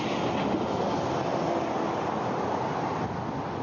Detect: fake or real real